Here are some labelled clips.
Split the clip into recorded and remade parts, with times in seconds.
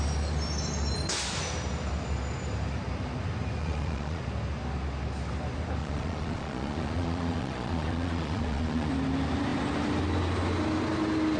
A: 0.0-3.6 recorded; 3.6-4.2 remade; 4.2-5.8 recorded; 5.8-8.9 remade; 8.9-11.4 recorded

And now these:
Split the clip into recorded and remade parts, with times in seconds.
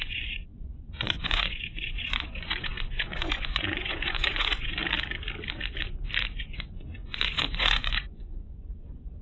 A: 0.0-4.8 remade; 4.8-6.4 recorded; 6.4-9.2 remade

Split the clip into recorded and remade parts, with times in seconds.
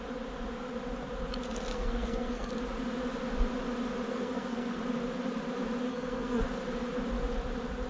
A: 0.0-1.7 recorded; 1.7-2.5 remade; 2.5-4.1 recorded; 4.1-4.8 remade; 4.8-5.9 recorded; 5.9-6.4 remade; 6.4-7.9 recorded